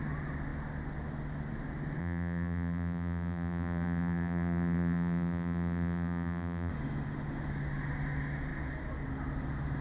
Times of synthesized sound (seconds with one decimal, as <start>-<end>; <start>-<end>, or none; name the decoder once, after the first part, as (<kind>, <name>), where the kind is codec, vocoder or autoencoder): 2.0-6.7 (vocoder, BigVGAN v2)